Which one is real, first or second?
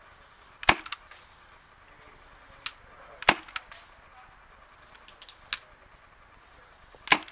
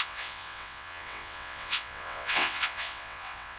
first